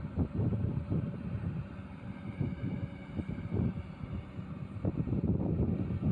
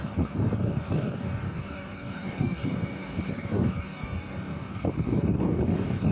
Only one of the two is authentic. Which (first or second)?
first